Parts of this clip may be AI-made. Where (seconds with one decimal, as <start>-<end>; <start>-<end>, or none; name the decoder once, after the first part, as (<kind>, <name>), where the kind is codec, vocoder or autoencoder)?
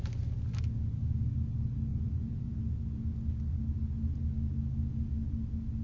1.9-2.6 (vocoder, Vocos)